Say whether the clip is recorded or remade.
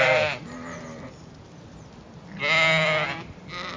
recorded